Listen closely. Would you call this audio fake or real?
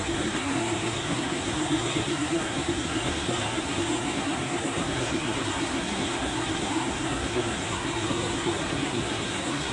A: fake